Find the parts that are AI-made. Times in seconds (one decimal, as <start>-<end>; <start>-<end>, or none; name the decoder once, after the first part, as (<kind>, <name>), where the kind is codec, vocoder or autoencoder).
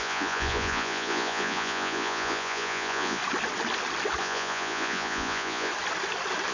0.0-3.2 (vocoder, Vocos); 4.2-5.7